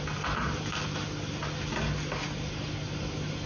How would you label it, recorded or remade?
recorded